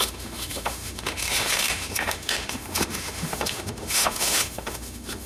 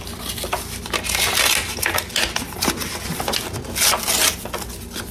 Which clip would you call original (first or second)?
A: second